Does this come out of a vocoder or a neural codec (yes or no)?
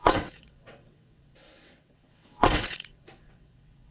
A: yes